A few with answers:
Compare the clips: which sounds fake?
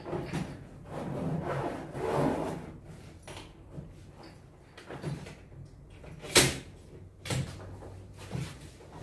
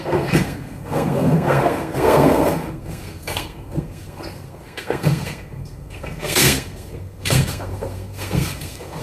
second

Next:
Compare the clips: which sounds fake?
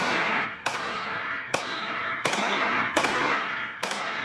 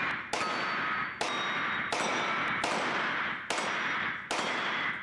first